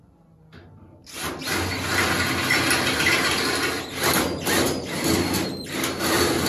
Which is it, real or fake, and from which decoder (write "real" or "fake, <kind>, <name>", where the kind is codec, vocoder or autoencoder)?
real